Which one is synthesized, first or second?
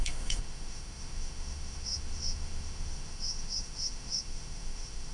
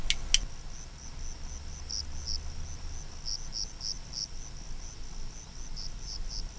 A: first